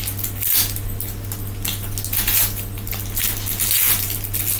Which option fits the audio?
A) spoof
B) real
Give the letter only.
B